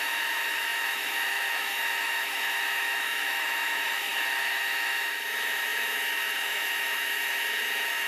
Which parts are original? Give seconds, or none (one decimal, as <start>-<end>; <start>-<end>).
none